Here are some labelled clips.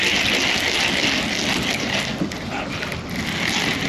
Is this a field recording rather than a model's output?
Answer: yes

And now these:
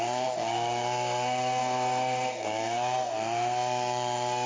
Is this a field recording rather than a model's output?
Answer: no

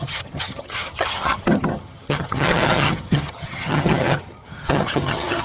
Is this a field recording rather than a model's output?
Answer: no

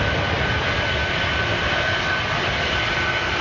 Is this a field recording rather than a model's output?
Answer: yes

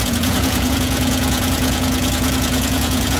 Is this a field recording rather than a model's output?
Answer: no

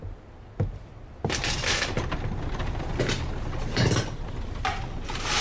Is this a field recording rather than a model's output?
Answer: yes